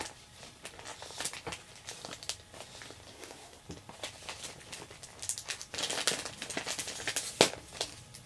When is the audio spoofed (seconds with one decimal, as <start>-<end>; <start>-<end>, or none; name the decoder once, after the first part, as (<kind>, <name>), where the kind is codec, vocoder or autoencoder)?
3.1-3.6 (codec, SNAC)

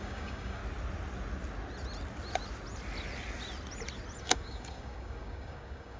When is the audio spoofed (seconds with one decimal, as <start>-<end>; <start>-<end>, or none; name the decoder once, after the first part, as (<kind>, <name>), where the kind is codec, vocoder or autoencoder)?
0.0-0.6 (codec, DAC); 4.2-6.0

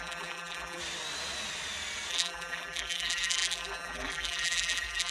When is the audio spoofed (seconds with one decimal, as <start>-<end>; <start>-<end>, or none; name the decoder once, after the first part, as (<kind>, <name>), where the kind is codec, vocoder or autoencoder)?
0.0-0.8 (vocoder, BigVGAN v2); 2.1-5.1